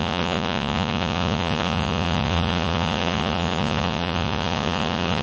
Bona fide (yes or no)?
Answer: no